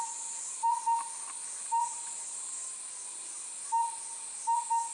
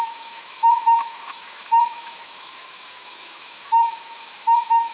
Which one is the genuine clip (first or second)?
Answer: first